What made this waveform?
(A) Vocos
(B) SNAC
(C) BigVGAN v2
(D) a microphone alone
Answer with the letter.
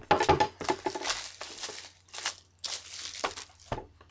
D